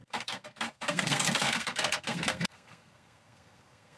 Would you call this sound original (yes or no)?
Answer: no